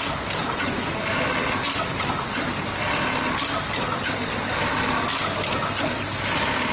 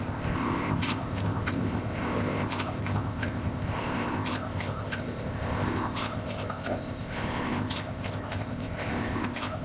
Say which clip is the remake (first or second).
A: second